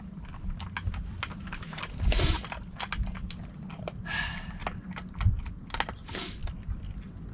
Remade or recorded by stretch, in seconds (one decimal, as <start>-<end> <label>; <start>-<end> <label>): 0.0-7.3 recorded